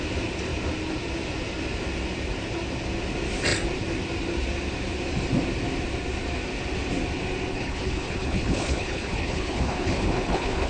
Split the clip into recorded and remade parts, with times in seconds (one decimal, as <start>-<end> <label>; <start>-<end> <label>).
0.0-7.5 recorded; 7.5-10.7 remade